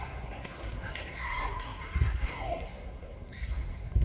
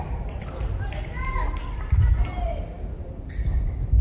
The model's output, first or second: first